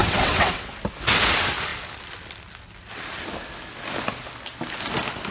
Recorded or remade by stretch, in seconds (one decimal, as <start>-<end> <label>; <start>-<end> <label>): 0.0-0.7 remade; 0.7-5.3 recorded